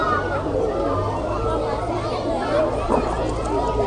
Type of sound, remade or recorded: recorded